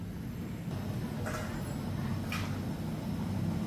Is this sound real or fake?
real